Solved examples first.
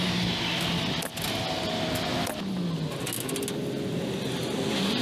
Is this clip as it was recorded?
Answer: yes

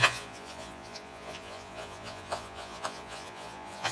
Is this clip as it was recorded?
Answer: no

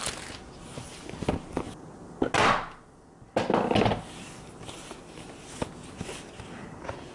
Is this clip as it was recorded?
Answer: yes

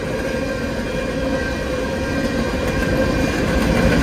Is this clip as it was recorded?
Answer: yes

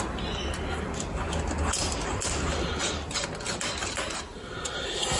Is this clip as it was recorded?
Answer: yes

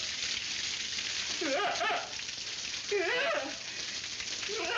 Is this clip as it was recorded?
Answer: yes